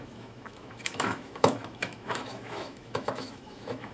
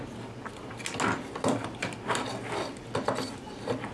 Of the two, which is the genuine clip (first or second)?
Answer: second